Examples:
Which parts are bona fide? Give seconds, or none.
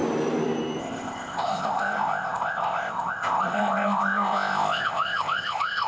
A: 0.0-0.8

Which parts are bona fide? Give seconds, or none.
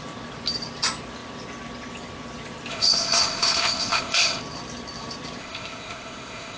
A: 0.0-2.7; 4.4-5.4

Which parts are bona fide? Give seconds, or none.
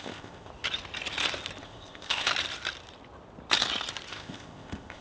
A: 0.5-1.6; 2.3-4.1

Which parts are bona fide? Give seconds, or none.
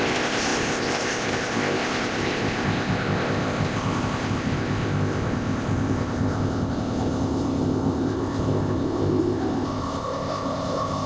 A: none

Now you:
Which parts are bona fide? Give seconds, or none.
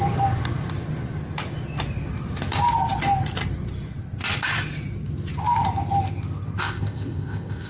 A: 0.0-6.6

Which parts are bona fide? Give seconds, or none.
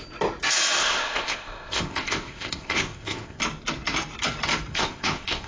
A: 0.0-0.8; 3.4-4.7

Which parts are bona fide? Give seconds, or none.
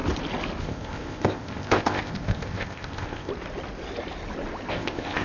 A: 0.0-0.6; 3.3-4.7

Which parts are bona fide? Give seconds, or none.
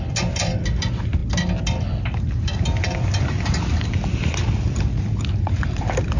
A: 0.0-6.2